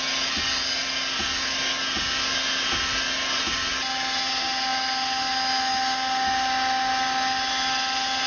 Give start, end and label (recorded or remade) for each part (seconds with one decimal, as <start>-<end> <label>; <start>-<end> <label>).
0.0-8.3 recorded